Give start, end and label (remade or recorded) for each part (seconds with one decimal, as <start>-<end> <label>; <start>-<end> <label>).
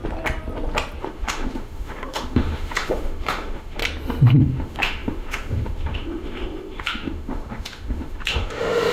0.0-1.0 recorded; 1.0-3.8 remade; 3.8-4.4 recorded; 4.4-8.9 remade